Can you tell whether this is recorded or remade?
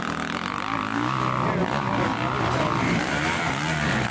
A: recorded